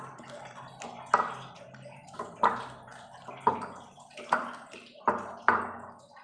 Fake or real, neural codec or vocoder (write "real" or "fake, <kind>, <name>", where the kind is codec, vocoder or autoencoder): real